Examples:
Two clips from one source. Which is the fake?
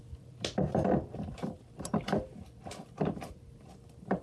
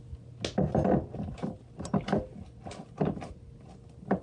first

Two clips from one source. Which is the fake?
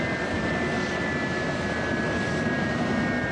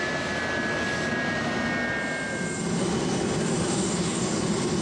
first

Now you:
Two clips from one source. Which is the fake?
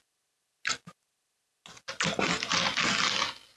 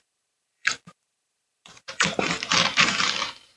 second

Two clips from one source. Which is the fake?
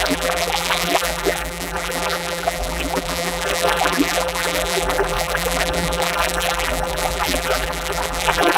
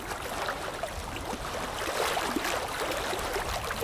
first